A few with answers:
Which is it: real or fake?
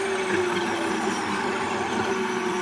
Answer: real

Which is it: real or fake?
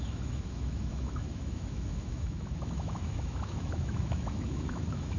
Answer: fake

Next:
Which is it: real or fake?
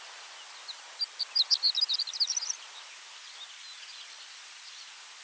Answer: real